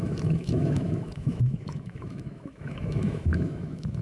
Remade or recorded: remade